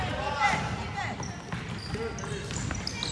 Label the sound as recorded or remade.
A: recorded